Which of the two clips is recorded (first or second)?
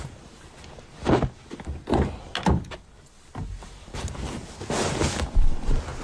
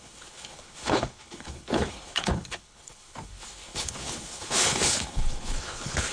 first